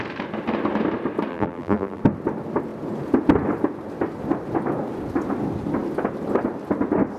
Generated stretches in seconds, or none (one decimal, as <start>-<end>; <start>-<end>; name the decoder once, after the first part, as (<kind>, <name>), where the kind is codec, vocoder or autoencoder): 1.3-2.0 (vocoder, BigVGAN v2)